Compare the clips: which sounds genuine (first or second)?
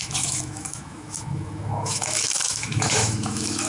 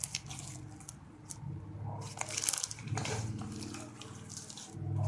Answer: second